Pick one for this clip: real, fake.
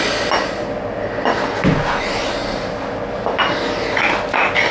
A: real